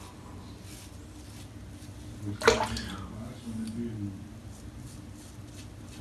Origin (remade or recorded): recorded